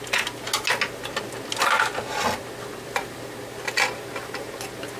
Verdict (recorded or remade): recorded